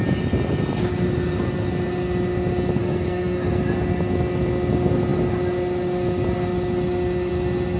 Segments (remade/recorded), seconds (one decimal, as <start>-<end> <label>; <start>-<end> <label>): 0.0-2.8 recorded; 2.8-3.6 remade; 3.6-7.8 recorded